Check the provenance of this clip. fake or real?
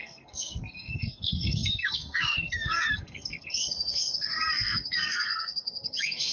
fake